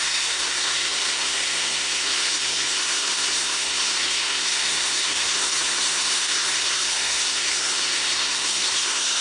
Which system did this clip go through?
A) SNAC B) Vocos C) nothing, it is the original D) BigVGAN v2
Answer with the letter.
A